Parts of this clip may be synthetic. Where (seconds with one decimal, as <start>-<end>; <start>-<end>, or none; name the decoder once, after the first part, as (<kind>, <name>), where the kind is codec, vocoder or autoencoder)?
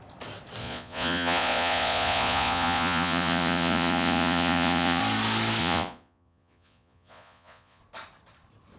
0.6-5.0 (vocoder, Vocos); 5.6-7.8